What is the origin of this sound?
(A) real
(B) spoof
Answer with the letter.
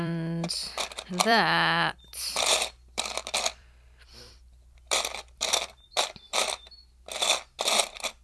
B